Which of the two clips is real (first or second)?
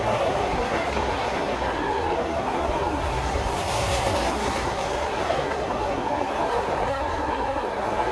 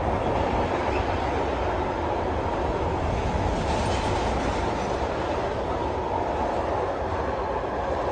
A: second